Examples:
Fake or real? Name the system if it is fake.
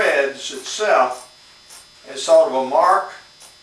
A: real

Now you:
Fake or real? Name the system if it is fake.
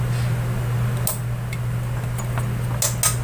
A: real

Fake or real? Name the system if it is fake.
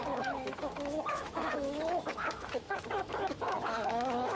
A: fake, autoencoder, DAC-VAE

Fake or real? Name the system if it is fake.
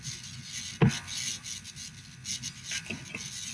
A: real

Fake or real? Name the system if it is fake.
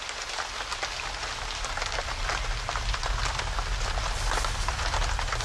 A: real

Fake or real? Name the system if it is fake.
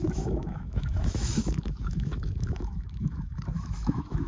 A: fake, autoencoder, DAC-VAE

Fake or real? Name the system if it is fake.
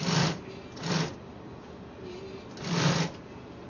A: real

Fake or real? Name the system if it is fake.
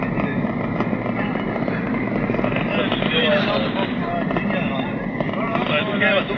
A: real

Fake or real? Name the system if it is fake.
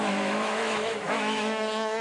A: fake, autoencoder, DAC-VAE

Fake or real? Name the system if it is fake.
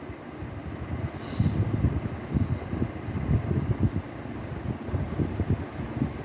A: real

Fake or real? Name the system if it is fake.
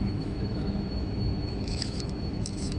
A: fake, autoencoder, DAC-VAE